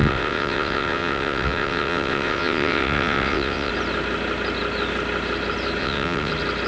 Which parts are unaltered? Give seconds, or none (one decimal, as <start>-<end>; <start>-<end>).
3.7-5.8; 6.3-6.7